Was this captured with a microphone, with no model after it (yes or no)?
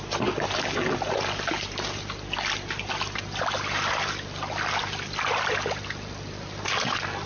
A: yes